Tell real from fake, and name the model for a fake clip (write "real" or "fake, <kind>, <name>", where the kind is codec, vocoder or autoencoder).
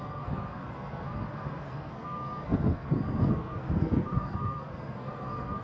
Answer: fake, codec, SNAC